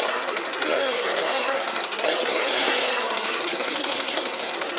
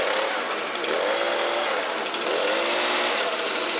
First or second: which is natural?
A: second